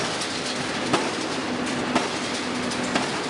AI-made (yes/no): no